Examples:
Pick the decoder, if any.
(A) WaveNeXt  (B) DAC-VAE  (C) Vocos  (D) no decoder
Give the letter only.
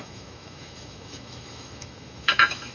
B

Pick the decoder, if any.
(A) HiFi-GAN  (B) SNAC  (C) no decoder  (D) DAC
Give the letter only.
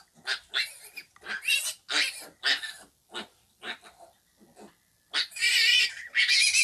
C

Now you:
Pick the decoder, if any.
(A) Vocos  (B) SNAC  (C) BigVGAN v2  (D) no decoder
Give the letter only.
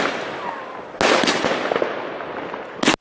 D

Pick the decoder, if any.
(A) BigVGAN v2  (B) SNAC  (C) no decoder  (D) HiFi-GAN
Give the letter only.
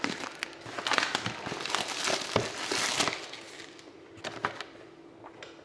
C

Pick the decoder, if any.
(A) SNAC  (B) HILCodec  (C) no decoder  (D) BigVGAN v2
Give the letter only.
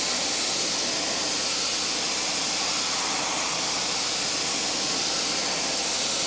C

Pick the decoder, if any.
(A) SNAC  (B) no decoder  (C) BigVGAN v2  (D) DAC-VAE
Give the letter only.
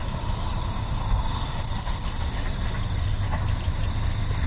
B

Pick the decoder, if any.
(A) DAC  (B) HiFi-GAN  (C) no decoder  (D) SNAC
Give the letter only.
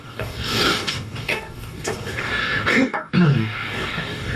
A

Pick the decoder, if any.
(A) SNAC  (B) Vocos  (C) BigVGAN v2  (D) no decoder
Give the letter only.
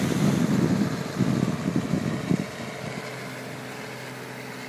D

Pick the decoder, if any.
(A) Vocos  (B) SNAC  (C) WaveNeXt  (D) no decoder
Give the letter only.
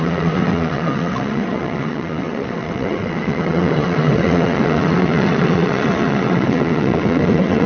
C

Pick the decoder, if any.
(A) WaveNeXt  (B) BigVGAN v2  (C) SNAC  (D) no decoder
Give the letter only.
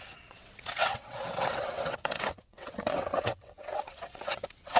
A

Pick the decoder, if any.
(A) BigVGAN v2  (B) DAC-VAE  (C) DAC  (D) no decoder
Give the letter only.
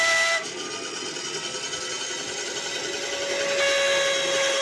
D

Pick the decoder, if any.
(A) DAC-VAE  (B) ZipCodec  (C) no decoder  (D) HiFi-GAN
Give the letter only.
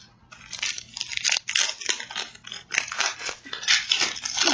C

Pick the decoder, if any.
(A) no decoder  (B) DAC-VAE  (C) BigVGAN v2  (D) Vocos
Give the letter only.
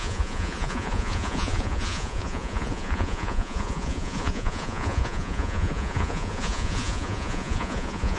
D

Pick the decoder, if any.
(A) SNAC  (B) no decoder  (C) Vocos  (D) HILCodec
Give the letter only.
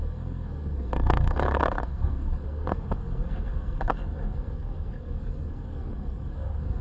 A